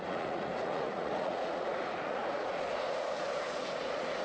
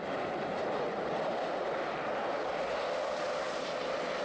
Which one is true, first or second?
second